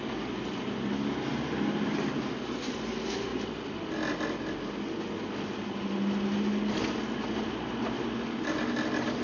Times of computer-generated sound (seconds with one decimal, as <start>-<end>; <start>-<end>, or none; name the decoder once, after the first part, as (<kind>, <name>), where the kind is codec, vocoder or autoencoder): none